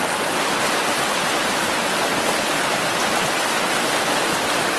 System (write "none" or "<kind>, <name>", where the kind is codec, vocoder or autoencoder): none